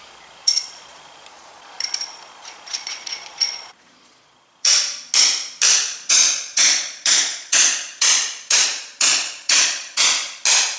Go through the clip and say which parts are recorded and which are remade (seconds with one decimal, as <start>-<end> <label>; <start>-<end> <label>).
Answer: 0.0-0.4 recorded; 0.4-4.7 remade; 4.7-5.9 recorded; 5.9-10.4 remade; 10.4-10.8 recorded